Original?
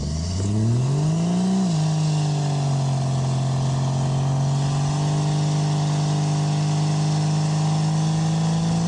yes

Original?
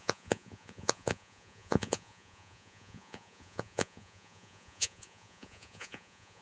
no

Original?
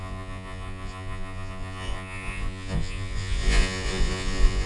no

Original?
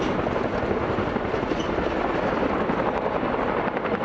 yes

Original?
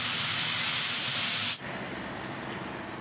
yes